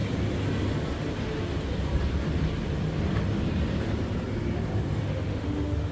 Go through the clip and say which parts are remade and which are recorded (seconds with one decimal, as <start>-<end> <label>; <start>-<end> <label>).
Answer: 0.0-5.0 recorded; 5.0-5.9 remade